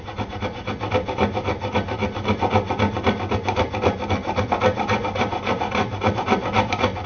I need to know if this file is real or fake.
real